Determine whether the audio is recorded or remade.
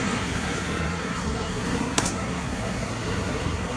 remade